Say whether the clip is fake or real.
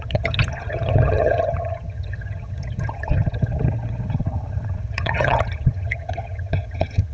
fake